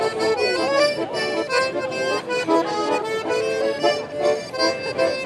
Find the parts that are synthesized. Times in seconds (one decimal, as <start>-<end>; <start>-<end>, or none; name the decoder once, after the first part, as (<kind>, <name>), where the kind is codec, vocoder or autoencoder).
none